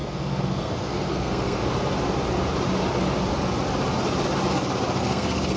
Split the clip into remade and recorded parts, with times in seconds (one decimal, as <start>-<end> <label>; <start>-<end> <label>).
0.0-1.6 remade; 1.6-5.0 recorded; 5.0-5.6 remade